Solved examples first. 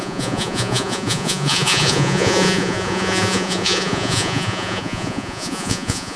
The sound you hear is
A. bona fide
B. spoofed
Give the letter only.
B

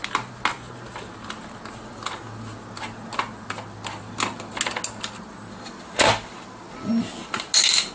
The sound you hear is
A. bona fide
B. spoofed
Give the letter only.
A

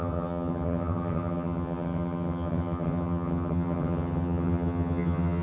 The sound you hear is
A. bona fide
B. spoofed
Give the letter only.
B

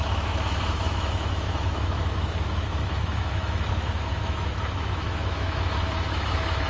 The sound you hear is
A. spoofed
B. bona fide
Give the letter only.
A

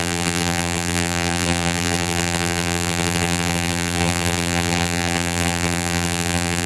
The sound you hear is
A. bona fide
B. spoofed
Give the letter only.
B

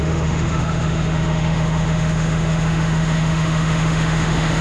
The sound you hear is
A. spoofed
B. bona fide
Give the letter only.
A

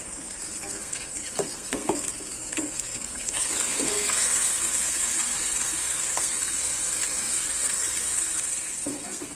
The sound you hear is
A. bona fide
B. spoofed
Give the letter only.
B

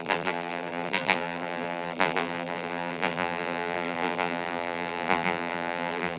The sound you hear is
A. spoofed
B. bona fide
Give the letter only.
A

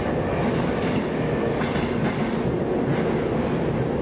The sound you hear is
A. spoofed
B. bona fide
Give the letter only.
B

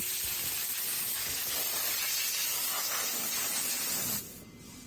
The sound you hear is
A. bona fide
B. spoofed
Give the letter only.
A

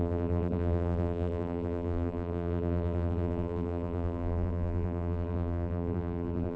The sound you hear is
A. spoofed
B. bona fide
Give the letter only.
A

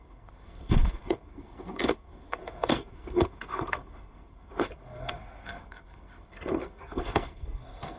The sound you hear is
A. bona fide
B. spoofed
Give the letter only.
B